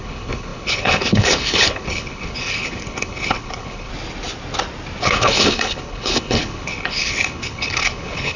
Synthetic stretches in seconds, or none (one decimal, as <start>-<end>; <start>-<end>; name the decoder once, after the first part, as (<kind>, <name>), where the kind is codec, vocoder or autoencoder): 0.0-3.9 (codec, HILCodec); 5.0-8.4